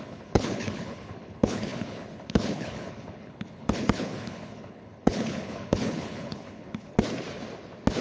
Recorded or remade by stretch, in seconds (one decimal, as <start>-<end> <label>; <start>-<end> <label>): 0.0-6.9 remade; 6.9-8.0 recorded